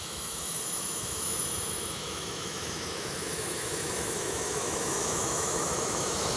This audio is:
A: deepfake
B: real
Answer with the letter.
A